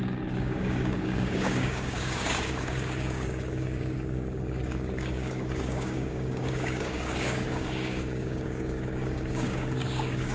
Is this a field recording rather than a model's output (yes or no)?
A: no